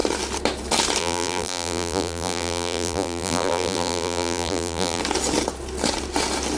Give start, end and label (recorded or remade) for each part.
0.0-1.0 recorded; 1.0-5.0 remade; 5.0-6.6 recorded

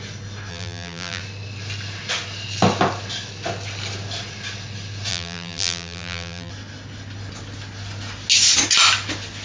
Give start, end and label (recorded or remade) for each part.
0.0-0.5 recorded; 0.5-1.2 remade; 1.2-5.1 recorded; 5.1-6.5 remade; 6.5-9.4 recorded